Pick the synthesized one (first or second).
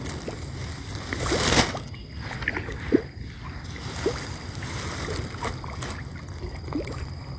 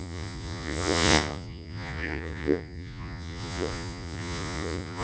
second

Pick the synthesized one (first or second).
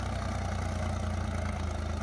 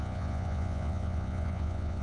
second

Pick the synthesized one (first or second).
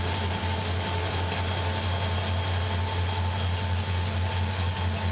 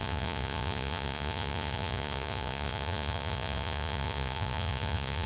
second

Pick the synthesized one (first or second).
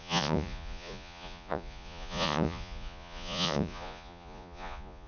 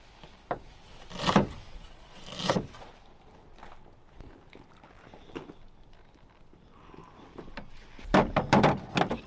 first